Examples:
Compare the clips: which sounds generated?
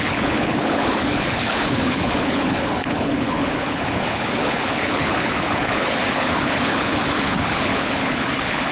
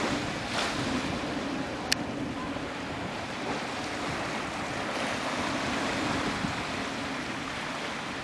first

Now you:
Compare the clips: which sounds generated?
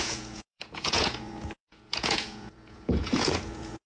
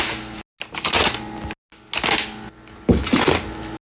first